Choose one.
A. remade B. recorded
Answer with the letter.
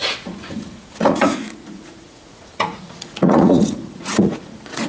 A